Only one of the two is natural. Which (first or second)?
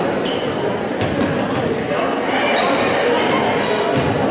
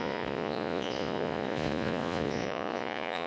first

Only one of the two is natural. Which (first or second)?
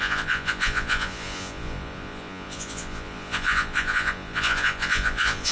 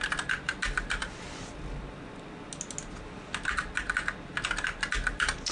second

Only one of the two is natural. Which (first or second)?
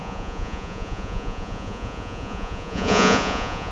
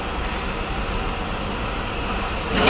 second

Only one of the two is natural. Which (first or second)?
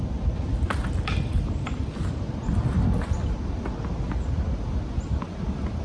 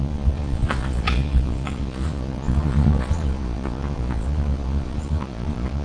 first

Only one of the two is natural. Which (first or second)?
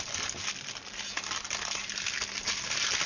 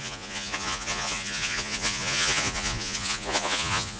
first